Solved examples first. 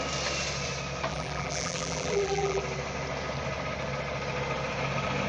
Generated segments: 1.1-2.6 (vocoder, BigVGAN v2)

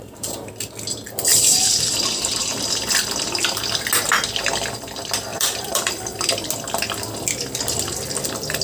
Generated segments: 0.0-0.5 (vocoder, BigVGAN v2); 1.3-2.7; 5.3-5.9

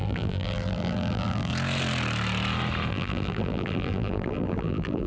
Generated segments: 0.0-1.5 (vocoder, BigVGAN v2); 2.9-5.1

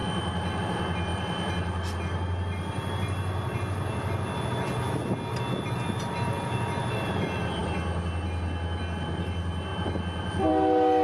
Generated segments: none

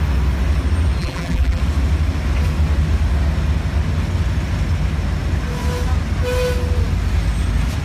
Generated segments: 1.0-1.6 (vocoder, BigVGAN v2)

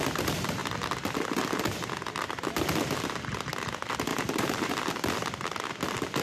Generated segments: 4.1-4.7 (vocoder, BigVGAN v2)

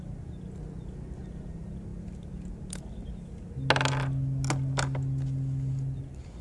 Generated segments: none

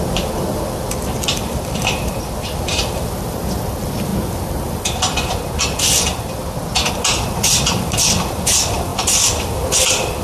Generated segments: 0.0-4.1 (vocoder, BigVGAN v2); 6.9-10.2